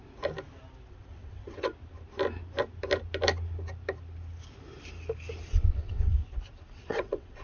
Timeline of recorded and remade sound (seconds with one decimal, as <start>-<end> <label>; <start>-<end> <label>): 0.0-0.9 recorded; 0.9-1.7 remade; 1.7-5.5 recorded; 5.5-6.1 remade; 6.1-6.7 recorded; 6.7-7.4 remade